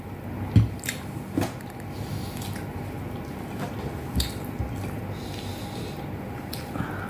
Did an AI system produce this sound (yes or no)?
no